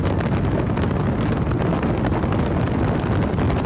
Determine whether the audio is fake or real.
real